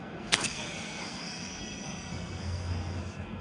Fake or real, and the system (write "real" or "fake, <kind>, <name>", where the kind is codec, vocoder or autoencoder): fake, codec, SNAC